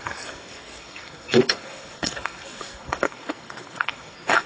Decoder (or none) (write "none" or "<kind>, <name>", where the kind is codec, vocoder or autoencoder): codec, SNAC